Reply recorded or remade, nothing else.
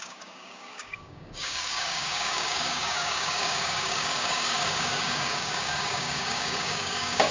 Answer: remade